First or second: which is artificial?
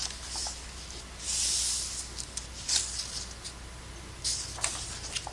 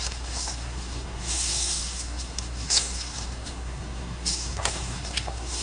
second